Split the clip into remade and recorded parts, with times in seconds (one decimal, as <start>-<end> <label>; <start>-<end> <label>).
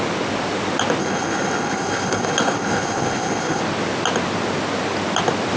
0.0-1.0 recorded; 1.0-3.6 remade; 3.6-5.6 recorded